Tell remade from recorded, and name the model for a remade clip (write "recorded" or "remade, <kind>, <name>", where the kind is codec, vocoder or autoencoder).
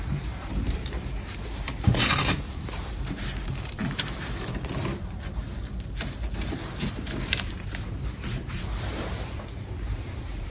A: remade, vocoder, BigVGAN v2